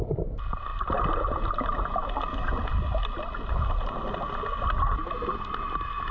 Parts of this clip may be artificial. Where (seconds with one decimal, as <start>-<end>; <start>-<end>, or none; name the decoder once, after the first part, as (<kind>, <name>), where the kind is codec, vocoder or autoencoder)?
none